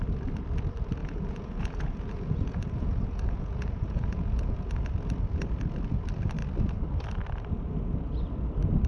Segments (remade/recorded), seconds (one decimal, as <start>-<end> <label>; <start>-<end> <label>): 0.0-1.0 recorded; 1.0-4.6 remade; 4.6-8.9 recorded